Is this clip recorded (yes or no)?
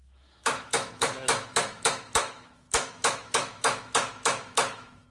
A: no